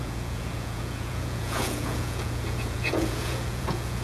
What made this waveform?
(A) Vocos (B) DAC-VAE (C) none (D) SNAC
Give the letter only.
A